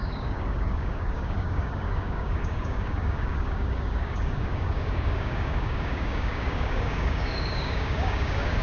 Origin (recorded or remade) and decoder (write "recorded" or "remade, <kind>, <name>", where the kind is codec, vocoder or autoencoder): remade, codec, DAC